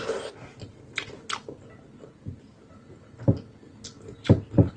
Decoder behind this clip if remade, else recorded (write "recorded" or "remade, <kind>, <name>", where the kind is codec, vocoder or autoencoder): recorded